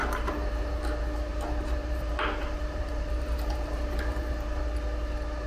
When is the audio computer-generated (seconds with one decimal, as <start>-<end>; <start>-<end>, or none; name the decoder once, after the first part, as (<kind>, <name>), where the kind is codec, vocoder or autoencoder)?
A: 0.0-0.8 (vocoder, BigVGAN v2); 1.3-4.6